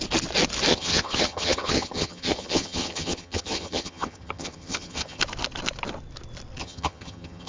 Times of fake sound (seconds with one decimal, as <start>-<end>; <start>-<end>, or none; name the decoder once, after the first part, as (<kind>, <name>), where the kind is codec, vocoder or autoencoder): 0.7-5.2 (vocoder, HiFi-GAN); 6.6-7.5